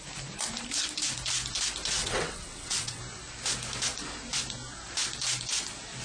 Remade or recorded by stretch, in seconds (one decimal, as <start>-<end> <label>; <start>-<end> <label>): 0.0-2.0 recorded; 2.0-3.0 remade; 3.0-6.0 recorded